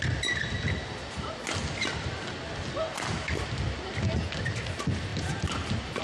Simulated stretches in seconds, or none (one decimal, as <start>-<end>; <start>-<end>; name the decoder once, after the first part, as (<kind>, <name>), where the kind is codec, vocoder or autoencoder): none